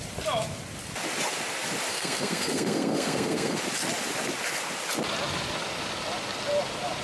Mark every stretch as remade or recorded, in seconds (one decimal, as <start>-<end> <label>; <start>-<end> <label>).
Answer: 0.0-1.9 recorded; 1.9-3.6 remade; 3.6-7.0 recorded

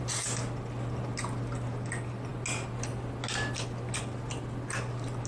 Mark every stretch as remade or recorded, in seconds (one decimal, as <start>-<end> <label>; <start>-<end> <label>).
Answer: 0.0-5.3 recorded

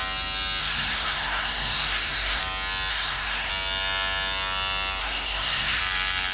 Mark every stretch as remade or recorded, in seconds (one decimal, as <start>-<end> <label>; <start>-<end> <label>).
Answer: 0.0-0.6 recorded; 0.6-2.4 remade; 2.4-2.9 recorded; 2.9-3.5 remade; 3.5-5.0 recorded; 5.0-5.8 remade; 5.8-6.3 recorded

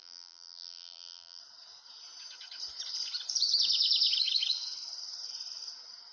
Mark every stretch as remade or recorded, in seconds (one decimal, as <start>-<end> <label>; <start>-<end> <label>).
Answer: 0.0-1.4 remade; 1.4-6.1 recorded

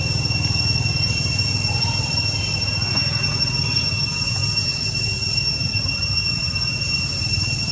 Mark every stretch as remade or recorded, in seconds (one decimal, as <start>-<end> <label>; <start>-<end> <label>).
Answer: 0.0-7.7 recorded

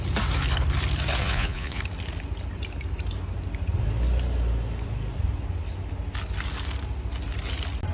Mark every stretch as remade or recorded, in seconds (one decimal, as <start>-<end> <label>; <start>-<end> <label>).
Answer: 0.0-1.2 recorded; 1.2-1.8 remade; 1.8-7.9 recorded

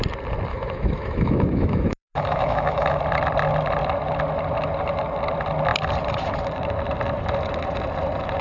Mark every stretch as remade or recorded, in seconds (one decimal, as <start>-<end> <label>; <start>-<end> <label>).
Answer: 0.0-0.5 recorded; 0.5-3.0 remade; 3.0-8.4 recorded

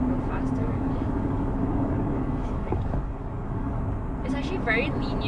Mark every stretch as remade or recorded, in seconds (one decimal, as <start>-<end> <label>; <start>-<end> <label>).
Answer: 0.0-0.6 recorded; 0.6-3.8 remade; 3.8-5.3 recorded